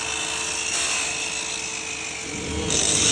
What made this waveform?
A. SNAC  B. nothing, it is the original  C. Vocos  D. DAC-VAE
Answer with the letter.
B